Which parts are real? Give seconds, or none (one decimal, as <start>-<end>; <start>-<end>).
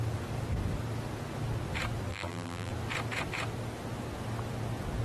0.0-2.1; 2.7-5.0